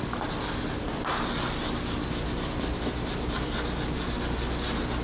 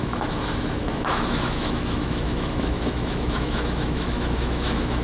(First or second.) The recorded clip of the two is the first